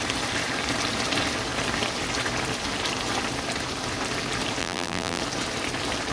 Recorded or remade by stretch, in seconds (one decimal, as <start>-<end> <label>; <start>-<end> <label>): 0.0-4.6 recorded; 4.6-5.2 remade; 5.2-6.1 recorded